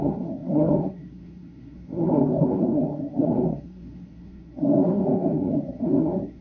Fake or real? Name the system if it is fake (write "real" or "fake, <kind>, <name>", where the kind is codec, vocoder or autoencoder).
fake, codec, SNAC